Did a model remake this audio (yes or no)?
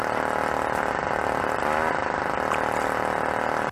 no